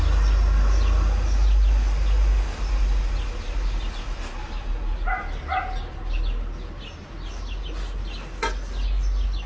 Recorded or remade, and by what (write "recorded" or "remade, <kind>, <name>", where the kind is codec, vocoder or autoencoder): recorded